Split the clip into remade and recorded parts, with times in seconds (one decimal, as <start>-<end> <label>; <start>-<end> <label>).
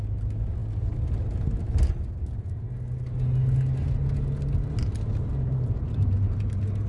0.0-6.9 recorded